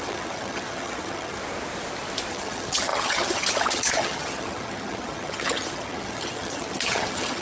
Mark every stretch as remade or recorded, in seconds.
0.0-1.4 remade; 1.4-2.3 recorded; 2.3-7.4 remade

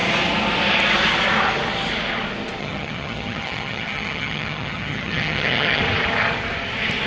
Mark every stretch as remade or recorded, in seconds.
0.0-2.6 recorded; 2.6-5.8 remade; 5.8-7.1 recorded